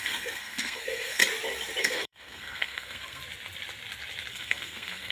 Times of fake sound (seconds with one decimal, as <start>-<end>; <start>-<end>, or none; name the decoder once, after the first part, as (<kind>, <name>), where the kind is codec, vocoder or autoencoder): 0.0-1.2 (codec, SNAC); 1.8-3.2; 4.3-5.1